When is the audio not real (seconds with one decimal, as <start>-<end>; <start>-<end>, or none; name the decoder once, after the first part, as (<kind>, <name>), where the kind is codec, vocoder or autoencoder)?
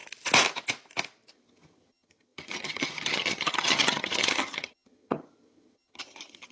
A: 1.3-6.5 (vocoder, HiFi-GAN)